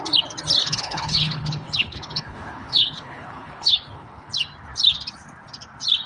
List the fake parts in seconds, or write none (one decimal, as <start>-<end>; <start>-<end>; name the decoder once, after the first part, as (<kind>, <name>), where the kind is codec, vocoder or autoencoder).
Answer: 0.6-4.3 (codec, HILCodec)